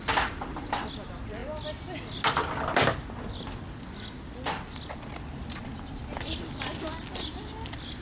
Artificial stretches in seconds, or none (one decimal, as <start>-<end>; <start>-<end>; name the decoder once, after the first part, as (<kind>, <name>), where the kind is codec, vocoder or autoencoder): none